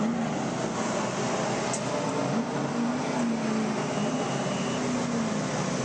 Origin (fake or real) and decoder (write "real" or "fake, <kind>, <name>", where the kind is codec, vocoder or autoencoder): real